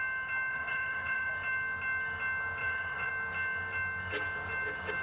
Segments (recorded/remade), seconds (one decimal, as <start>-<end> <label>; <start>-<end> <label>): 0.0-0.5 recorded; 0.5-1.3 remade; 1.3-2.6 recorded; 2.6-3.1 remade; 3.1-5.0 recorded